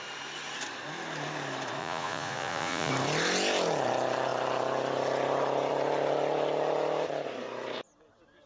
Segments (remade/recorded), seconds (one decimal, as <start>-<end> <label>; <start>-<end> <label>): 0.0-1.8 recorded; 1.8-2.9 remade; 2.9-8.5 recorded